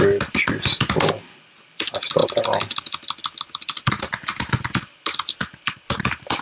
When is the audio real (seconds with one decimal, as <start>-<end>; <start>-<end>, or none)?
0.0-6.4